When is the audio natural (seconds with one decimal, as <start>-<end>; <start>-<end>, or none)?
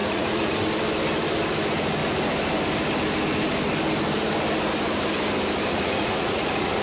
0.5-5.7